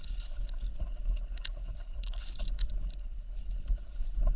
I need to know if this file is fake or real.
fake